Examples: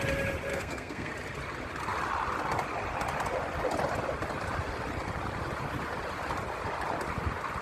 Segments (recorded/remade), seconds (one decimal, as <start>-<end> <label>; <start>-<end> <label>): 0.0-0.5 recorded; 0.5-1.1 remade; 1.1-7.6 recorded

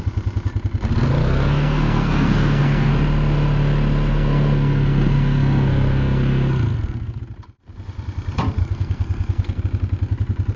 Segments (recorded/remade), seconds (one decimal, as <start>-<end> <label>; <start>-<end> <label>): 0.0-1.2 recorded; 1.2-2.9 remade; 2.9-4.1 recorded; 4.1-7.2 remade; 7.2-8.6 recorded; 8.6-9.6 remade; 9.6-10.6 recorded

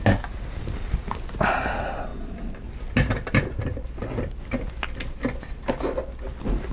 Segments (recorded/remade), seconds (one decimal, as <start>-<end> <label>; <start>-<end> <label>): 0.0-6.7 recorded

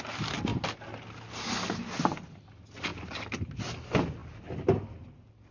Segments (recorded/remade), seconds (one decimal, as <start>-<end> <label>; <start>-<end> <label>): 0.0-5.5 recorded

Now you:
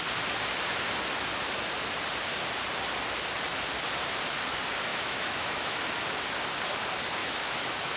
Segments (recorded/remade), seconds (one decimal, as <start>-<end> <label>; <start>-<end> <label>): 0.0-4.9 recorded; 4.9-5.8 remade; 5.8-7.2 recorded; 7.2-8.0 remade

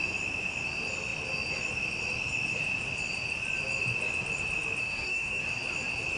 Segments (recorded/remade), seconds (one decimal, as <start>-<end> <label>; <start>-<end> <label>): 0.0-4.8 recorded; 4.8-5.4 remade; 5.4-6.2 recorded

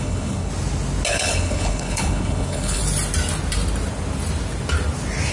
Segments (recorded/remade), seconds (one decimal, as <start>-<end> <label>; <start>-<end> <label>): 0.0-0.5 remade; 0.5-1.1 recorded; 1.1-2.8 remade; 2.8-5.3 recorded

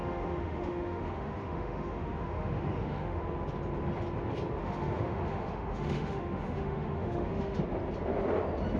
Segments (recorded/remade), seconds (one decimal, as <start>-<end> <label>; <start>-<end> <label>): 0.0-3.2 remade; 3.2-4.6 recorded; 4.6-7.6 remade; 7.6-8.8 recorded